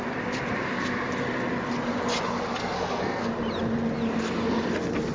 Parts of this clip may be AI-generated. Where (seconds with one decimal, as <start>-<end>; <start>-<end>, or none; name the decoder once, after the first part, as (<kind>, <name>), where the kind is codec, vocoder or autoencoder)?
2.6-3.3 (codec, SNAC)

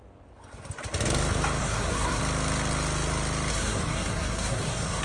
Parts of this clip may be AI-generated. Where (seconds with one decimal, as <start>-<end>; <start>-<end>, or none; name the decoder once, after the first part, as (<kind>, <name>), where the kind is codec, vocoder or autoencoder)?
1.6-2.2 (codec, SNAC); 3.5-5.0

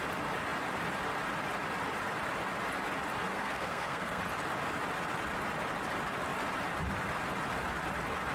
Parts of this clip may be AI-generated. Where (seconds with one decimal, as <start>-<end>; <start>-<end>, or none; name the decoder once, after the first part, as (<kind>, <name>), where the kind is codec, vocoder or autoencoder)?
3.3-4.2 (codec, SNAC)

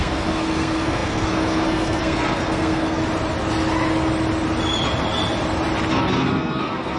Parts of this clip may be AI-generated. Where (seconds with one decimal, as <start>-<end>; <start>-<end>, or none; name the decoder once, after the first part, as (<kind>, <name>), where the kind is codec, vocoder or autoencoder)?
0.0-3.0 (codec, SNAC); 5.9-7.0

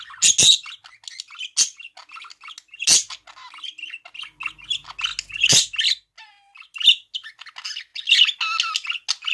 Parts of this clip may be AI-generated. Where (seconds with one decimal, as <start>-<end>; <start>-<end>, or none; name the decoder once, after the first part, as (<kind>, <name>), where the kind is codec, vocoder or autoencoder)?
none

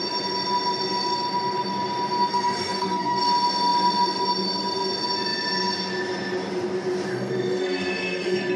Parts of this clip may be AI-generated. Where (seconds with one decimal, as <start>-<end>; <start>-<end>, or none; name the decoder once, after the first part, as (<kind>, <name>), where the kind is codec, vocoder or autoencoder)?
2.3-3.2 (codec, SNAC); 7.1-8.6

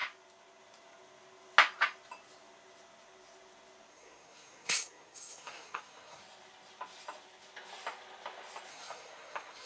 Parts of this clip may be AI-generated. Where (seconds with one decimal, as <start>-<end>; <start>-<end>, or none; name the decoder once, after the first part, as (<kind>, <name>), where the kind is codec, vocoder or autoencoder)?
3.9-6.2 (codec, SNAC); 8.7-9.7

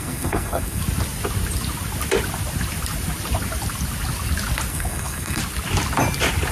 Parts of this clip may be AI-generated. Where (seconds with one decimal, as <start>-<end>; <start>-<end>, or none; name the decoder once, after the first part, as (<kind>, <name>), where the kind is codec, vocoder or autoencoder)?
0.0-0.8 (codec, SNAC); 4.7-5.4